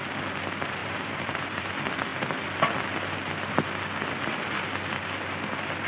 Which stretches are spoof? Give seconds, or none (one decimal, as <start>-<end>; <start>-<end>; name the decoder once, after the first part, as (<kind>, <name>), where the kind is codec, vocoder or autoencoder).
0.8-1.6 (vocoder, BigVGAN v2)